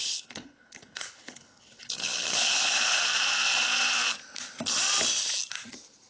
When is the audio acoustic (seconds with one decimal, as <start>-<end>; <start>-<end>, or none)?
3.0-6.1